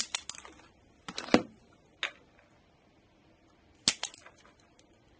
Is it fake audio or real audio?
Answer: real